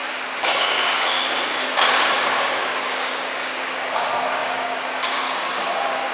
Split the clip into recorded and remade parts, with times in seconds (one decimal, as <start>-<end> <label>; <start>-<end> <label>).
0.0-6.1 remade